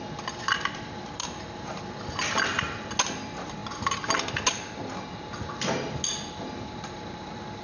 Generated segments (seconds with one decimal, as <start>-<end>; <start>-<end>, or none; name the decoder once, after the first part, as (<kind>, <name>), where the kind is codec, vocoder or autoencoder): none